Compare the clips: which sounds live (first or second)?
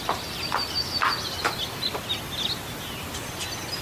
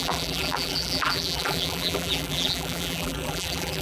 first